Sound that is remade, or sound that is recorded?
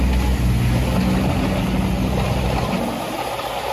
recorded